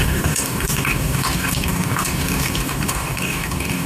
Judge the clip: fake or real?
fake